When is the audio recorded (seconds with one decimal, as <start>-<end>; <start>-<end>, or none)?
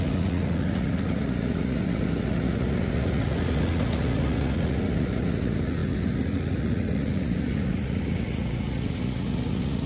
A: none